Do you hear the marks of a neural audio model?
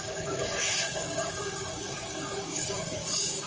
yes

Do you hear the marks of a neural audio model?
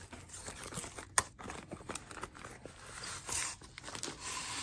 no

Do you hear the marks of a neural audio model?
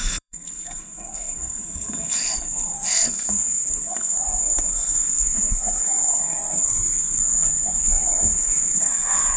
yes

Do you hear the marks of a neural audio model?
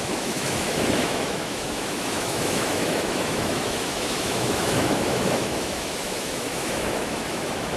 yes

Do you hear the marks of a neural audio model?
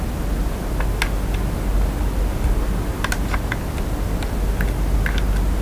no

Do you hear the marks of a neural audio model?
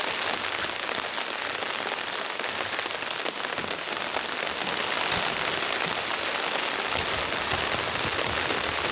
no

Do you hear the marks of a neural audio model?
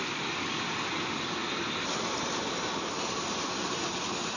no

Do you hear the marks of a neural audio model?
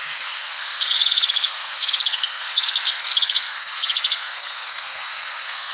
yes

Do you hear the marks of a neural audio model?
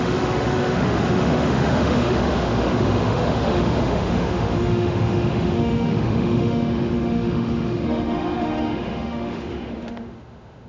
yes